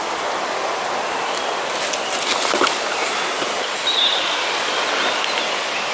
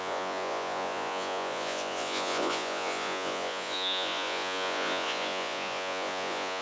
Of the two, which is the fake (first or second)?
second